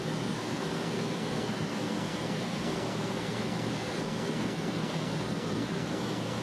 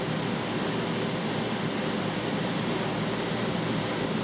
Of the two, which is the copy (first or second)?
first